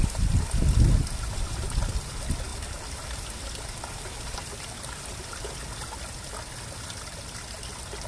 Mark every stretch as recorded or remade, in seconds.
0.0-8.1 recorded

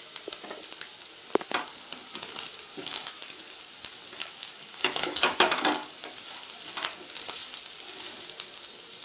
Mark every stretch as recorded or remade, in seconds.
0.0-2.8 recorded; 2.8-3.4 remade; 3.4-4.2 recorded; 4.2-5.6 remade; 5.6-9.0 recorded

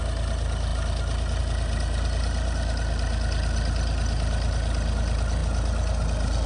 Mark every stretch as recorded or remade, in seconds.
0.0-6.5 recorded